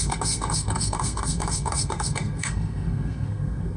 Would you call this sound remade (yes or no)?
yes